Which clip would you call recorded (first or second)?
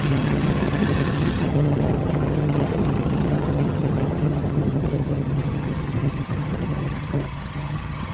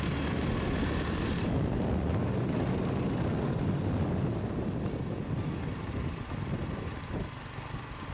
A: second